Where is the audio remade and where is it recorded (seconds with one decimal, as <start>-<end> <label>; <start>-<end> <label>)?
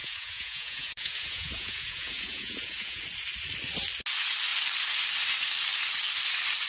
0.0-3.0 remade; 3.0-6.7 recorded